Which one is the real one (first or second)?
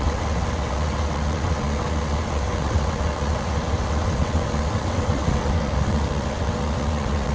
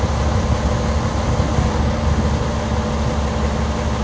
second